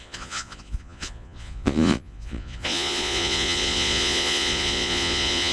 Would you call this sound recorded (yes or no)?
no